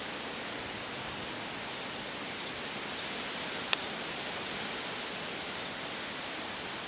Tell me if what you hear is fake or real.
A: real